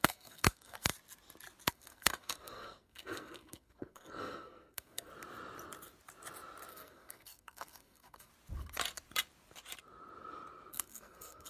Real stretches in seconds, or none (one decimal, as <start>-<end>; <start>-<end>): 0.9-1.7; 5.1-6.7; 8.3-10.7